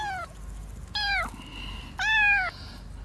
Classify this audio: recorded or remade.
recorded